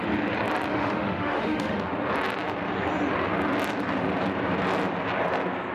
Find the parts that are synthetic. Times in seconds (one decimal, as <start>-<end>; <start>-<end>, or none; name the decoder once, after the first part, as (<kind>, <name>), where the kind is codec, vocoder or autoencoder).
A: 0.7-1.8 (autoencoder, DAC-VAE)